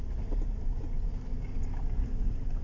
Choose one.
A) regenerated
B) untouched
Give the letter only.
B